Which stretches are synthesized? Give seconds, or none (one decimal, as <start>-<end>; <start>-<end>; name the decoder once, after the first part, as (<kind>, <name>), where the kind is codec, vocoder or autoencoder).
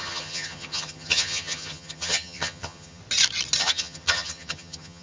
0.0-3.0 (vocoder, HiFi-GAN); 3.6-5.0